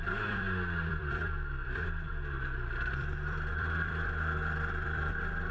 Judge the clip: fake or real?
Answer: fake